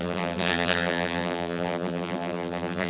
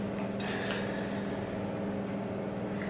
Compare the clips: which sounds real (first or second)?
second